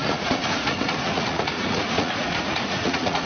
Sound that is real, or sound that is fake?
fake